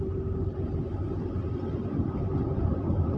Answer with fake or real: real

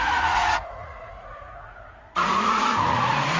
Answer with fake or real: fake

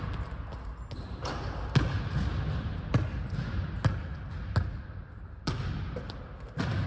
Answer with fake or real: real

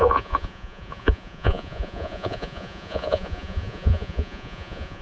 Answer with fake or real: fake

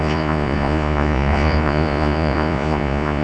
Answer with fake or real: fake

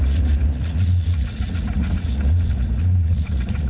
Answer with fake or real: fake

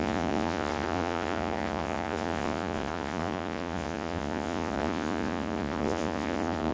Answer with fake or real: fake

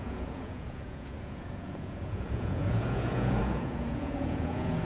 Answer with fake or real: fake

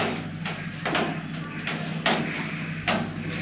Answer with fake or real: real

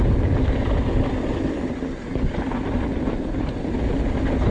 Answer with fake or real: real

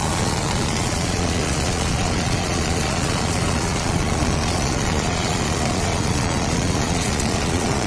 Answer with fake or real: fake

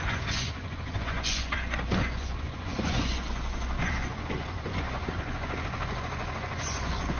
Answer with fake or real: fake